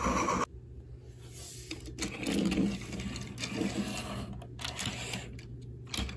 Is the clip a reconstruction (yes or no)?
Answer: no